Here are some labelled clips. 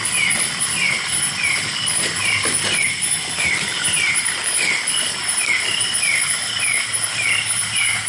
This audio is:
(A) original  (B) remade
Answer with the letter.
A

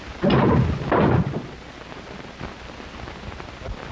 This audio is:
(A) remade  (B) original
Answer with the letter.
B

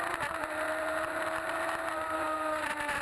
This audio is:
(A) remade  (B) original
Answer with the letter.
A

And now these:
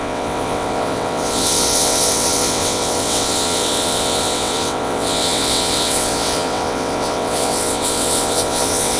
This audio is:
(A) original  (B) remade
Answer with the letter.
B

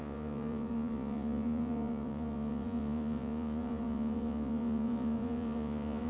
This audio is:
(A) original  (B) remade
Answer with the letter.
B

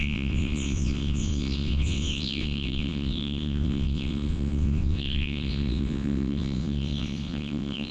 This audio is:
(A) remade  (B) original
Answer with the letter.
A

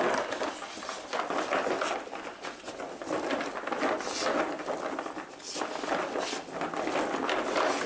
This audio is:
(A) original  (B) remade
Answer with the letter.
A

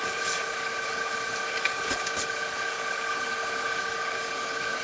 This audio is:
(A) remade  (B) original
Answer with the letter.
A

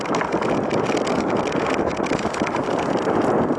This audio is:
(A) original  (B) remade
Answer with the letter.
A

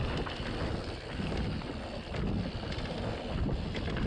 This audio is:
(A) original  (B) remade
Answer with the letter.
A